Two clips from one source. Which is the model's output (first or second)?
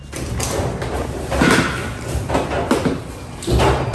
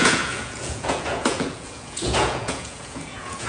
second